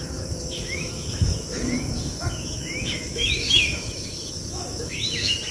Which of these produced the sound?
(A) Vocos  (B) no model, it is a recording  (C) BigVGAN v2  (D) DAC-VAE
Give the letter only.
D